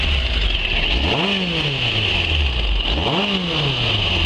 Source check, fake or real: real